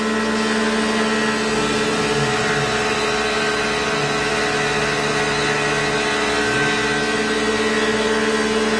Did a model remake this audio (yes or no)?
no